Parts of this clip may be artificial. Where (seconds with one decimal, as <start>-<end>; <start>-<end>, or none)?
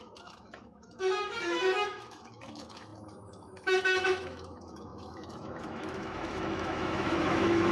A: 0.0-7.7